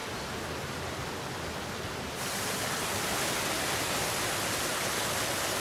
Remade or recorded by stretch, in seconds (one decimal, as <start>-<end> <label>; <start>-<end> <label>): 0.0-5.6 recorded